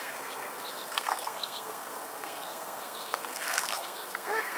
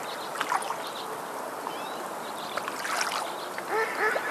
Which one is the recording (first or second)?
second